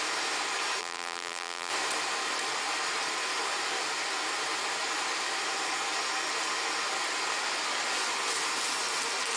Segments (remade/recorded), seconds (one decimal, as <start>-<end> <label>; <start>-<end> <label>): 0.0-0.8 recorded; 0.8-1.7 remade; 1.7-9.4 recorded